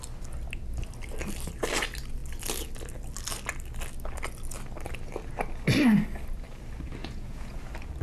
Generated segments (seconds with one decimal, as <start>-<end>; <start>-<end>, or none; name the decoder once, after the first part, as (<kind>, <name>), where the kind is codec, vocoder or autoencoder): 7.0-7.6 (vocoder, Vocos)